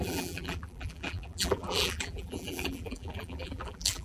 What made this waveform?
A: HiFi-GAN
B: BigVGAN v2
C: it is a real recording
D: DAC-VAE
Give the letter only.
B